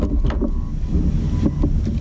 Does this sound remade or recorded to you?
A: recorded